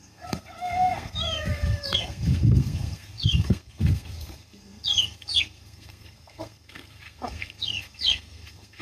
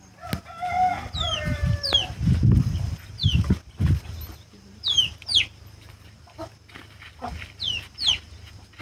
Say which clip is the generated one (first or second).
first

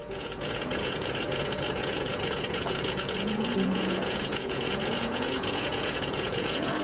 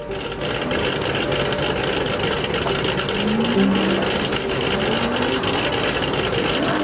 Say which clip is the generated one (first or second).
first